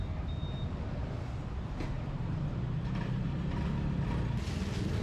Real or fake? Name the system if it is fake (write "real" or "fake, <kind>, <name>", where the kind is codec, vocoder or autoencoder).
real